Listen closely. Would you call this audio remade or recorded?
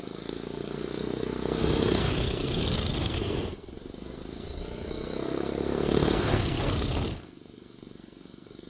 remade